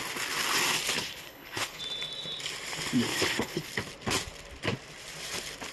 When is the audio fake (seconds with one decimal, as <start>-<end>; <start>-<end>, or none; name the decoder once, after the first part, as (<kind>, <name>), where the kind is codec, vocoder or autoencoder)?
1.0-1.8 (codec, HILCodec); 3.1-3.7